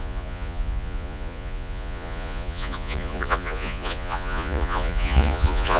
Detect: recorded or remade remade